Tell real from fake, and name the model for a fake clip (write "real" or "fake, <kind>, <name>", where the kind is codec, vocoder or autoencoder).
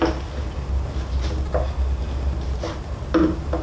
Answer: real